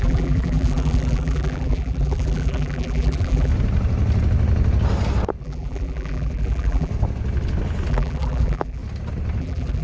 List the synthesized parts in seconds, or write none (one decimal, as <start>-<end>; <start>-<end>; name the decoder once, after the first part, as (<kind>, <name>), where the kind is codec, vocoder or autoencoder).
0.0-3.5 (vocoder, BigVGAN v2); 5.4-6.9; 7.9-8.8; 9.4-9.8